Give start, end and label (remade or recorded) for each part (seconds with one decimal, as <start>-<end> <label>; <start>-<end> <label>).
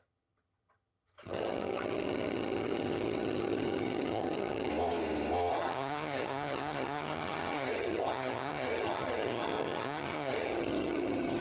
0.0-4.7 remade; 4.7-5.5 recorded; 5.5-11.4 remade